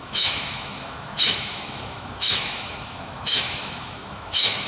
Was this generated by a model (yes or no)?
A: yes